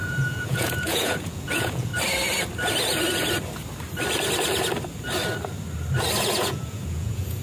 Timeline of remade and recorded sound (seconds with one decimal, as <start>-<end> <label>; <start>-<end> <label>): 0.0-1.9 remade; 1.9-6.2 recorded; 6.2-7.4 remade